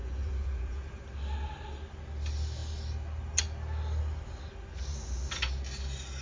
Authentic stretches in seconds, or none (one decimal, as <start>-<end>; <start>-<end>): 1.0-6.2